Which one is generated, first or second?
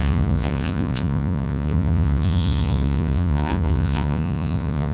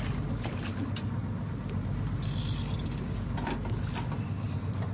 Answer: first